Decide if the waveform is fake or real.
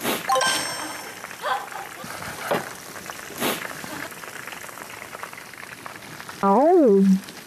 real